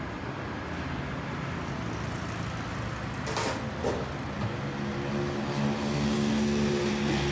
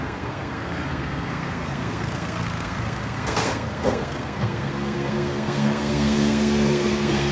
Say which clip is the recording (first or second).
first